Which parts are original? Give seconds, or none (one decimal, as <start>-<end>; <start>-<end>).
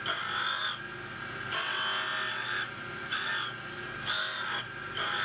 0.0-5.2